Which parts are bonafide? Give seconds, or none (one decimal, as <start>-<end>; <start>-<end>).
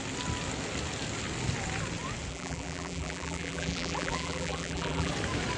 0.0-2.3; 5.1-5.6